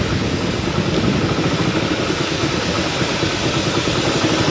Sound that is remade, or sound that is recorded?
recorded